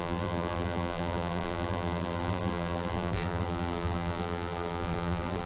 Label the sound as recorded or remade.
remade